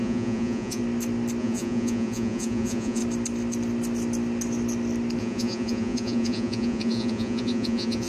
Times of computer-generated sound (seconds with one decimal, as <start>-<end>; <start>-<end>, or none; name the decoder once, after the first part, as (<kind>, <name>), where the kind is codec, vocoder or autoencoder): 0.0-0.8 (vocoder, Vocos); 1.4-3.0; 5.2-8.1